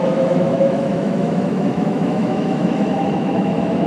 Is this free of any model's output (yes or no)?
no